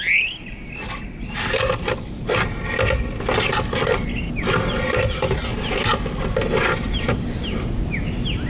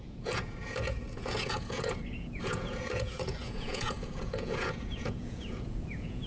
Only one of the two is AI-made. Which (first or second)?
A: second